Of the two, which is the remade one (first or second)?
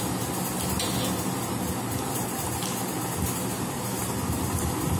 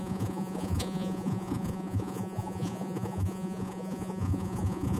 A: second